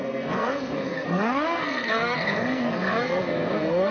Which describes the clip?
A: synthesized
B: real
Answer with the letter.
A